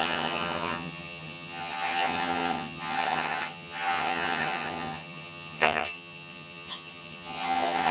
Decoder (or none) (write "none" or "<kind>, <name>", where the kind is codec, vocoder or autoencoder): vocoder, HiFi-GAN